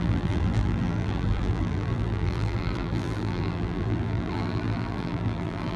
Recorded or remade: remade